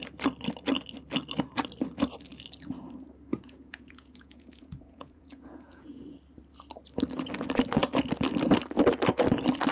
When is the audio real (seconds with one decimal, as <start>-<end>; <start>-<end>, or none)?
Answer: 0.0-3.3; 6.2-9.7